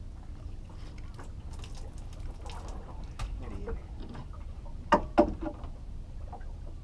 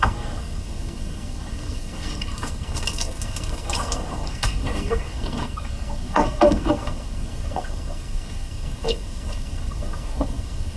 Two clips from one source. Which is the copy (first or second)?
second